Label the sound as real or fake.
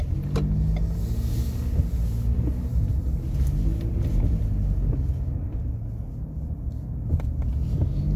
real